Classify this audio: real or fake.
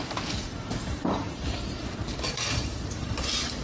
fake